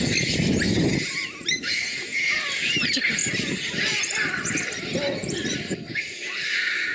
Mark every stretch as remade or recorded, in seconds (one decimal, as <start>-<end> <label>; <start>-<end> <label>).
0.0-3.2 recorded; 3.2-4.5 remade; 4.5-5.2 recorded; 5.2-6.2 remade; 6.2-6.9 recorded